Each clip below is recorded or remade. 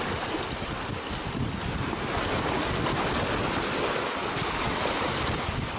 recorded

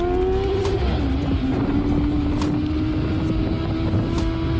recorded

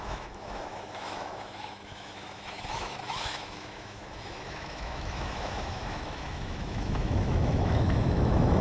remade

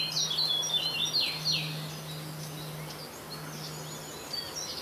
recorded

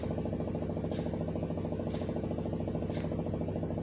recorded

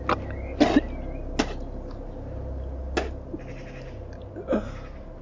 recorded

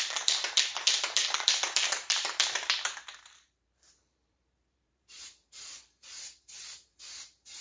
remade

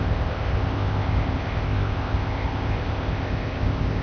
remade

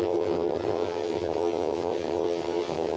remade